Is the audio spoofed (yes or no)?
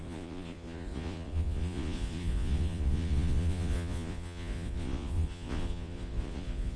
yes